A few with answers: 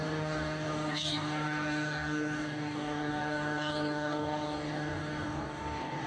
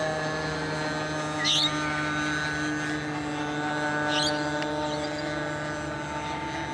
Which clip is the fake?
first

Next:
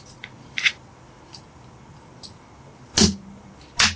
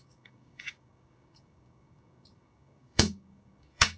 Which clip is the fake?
second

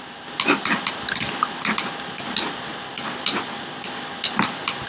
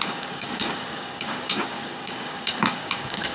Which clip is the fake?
second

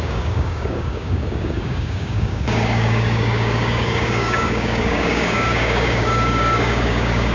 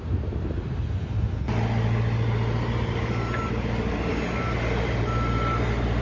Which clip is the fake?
first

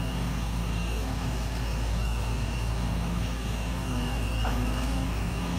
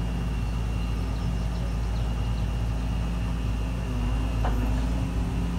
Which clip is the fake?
first